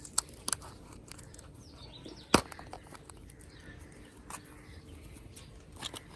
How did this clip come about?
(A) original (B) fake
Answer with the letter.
A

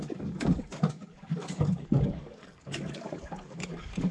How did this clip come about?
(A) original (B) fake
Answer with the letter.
B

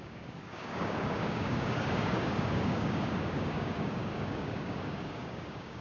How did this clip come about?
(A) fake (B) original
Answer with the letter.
A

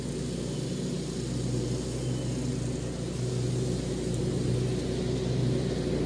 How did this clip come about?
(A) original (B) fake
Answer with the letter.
A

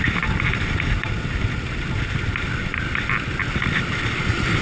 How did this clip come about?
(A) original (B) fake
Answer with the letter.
A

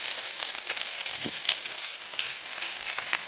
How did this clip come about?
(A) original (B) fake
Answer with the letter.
B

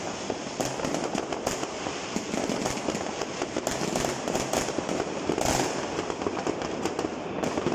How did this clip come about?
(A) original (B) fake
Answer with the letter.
A